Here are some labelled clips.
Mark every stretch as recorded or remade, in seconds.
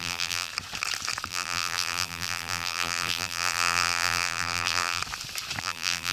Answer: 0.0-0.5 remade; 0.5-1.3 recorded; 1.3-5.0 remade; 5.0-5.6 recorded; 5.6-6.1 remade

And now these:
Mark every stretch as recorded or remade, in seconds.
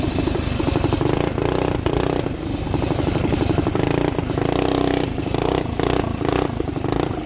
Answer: 0.0-6.3 recorded; 6.3-7.3 remade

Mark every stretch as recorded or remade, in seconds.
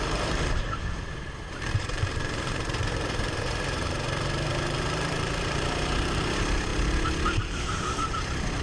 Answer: 0.0-6.7 remade; 6.7-7.4 recorded; 7.4-8.6 remade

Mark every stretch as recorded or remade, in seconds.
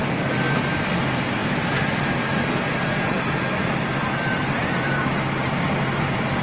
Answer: 0.0-0.6 recorded; 0.6-6.4 remade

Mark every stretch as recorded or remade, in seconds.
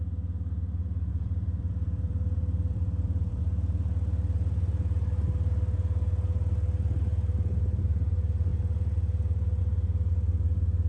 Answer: 0.0-1.1 recorded; 1.1-3.4 remade; 3.4-10.9 recorded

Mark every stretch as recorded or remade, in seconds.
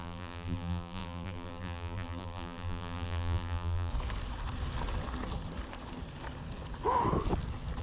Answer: 0.0-3.9 remade; 3.9-7.8 recorded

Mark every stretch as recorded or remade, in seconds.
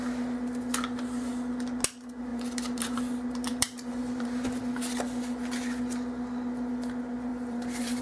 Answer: 0.0-2.3 recorded; 2.3-3.0 remade; 3.0-3.5 recorded; 3.5-4.6 remade; 4.6-7.3 recorded; 7.3-8.0 remade